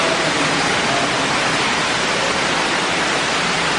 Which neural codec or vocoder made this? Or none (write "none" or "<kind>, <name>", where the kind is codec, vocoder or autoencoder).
none